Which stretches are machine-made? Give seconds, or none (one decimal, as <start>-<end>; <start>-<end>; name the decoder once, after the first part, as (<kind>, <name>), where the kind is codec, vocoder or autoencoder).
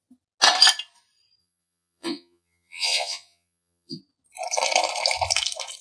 1.4-4.0 (vocoder, Vocos)